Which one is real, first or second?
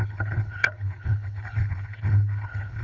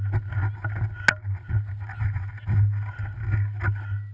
second